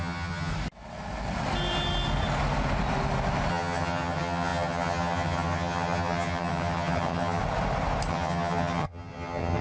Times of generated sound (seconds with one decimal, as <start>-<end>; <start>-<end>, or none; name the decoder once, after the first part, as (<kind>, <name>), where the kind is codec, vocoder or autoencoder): 0.0-0.5 (vocoder, HiFi-GAN); 3.5-7.4; 8.1-9.6